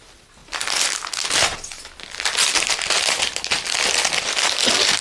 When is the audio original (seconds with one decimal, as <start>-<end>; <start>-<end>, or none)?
0.0-5.0